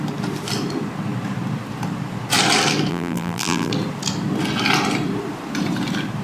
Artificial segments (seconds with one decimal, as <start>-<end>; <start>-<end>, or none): 2.9-3.7